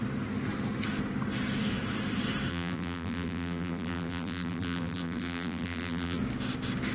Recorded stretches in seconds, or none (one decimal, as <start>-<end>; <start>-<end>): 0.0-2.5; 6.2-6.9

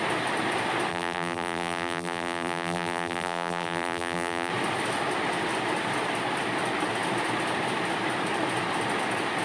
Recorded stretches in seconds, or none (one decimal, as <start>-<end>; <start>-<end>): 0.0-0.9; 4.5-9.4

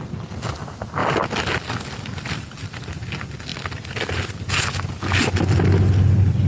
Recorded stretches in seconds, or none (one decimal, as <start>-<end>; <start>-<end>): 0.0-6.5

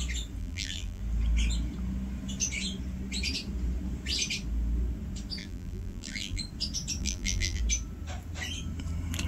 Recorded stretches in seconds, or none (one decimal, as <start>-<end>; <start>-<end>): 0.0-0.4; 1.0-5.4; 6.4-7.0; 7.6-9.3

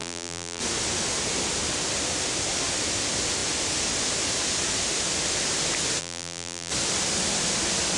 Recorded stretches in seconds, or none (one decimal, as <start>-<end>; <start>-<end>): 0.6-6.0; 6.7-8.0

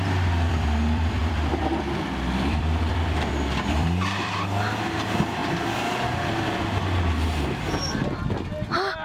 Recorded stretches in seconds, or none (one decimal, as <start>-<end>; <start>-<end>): 5.4-7.9

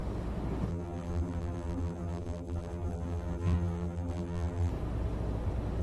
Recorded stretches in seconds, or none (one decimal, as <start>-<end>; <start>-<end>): 0.0-0.7; 4.7-5.8